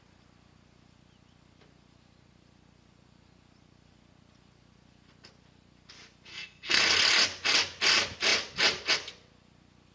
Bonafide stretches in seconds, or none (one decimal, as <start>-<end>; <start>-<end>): 0.0-6.3; 6.8-9.9